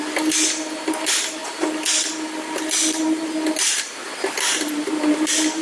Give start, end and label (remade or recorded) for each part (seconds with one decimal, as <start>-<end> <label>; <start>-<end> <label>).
0.0-5.6 recorded